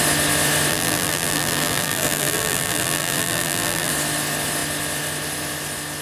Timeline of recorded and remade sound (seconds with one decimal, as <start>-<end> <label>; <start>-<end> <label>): 0.0-0.7 recorded; 0.7-3.9 remade; 3.9-6.0 recorded